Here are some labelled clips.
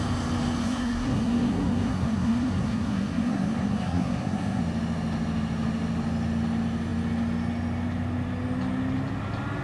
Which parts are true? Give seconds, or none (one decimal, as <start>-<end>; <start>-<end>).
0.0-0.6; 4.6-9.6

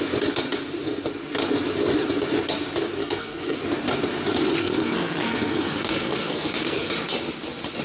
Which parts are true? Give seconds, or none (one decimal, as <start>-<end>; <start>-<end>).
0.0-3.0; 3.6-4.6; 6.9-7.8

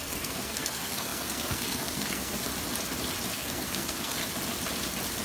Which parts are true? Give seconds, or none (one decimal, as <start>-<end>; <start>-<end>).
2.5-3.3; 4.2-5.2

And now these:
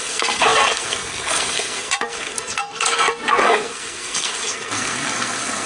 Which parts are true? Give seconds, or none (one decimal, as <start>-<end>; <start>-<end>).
none

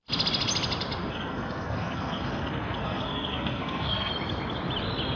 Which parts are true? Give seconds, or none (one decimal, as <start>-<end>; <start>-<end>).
0.0-1.0; 4.1-5.2

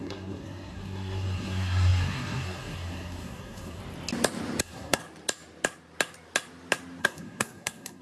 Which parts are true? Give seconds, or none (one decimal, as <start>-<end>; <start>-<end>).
3.8-4.6; 5.0-7.0